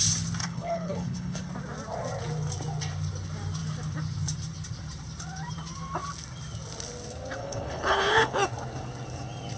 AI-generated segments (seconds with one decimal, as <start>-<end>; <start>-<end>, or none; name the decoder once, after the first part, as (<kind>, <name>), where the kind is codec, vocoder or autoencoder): 0.4-1.5 (codec, HILCodec); 7.4-8.3